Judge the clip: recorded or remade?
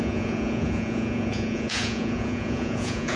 remade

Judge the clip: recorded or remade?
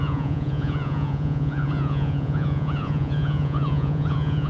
remade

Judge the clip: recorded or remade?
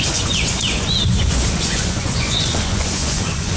remade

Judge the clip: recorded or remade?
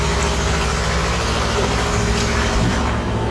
recorded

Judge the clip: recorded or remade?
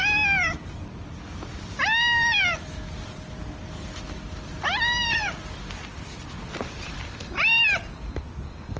recorded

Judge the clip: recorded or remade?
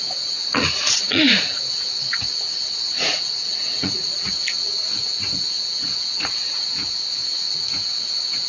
remade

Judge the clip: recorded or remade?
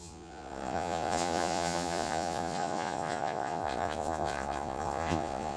remade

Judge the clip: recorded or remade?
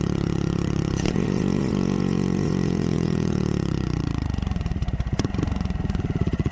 remade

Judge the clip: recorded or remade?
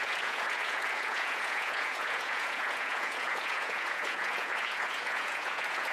remade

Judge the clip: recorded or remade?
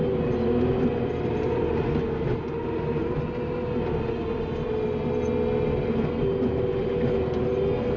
recorded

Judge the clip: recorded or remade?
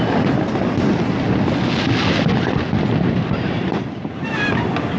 recorded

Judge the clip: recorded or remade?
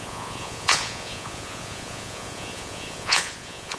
remade